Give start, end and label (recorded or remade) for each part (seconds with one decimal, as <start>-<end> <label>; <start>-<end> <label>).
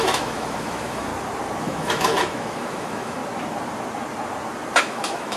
0.0-1.1 remade; 1.1-1.6 recorded; 1.6-3.2 remade; 3.2-4.8 recorded; 4.8-5.4 remade